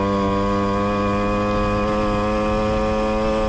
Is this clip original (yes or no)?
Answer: yes